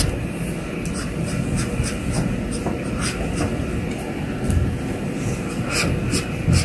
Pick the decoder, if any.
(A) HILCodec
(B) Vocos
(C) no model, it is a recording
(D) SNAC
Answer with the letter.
C